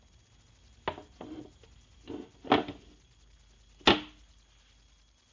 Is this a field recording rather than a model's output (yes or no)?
yes